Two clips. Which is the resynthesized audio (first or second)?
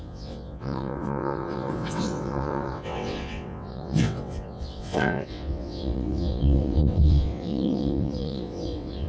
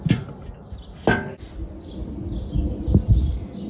first